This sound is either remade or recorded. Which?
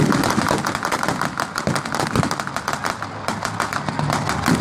recorded